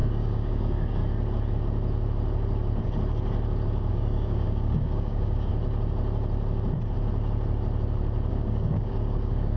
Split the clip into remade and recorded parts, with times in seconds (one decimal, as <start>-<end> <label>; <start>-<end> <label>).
0.0-1.0 remade; 1.0-3.9 recorded; 3.9-5.5 remade; 5.5-8.3 recorded; 8.3-9.6 remade